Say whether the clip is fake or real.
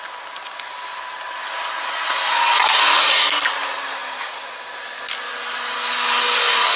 real